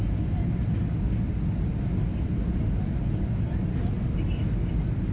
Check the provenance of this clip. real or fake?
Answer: real